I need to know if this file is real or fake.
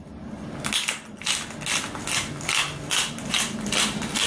real